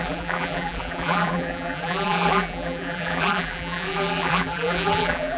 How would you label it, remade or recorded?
remade